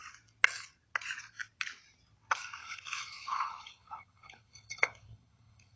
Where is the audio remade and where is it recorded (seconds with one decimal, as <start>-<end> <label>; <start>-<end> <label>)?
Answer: 0.0-2.6 recorded; 2.6-5.8 remade